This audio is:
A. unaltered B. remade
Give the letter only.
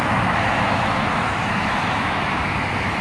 B